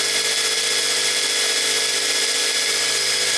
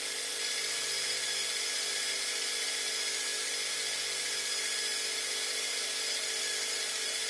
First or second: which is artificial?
second